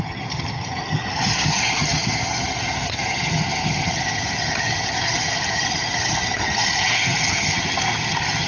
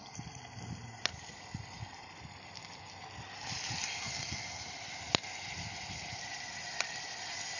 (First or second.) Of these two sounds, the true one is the second